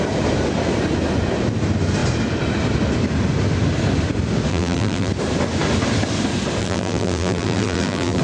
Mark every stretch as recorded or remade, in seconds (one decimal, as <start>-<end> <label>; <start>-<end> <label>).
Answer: 0.0-4.5 recorded; 4.5-5.1 remade; 5.1-6.6 recorded; 6.6-8.2 remade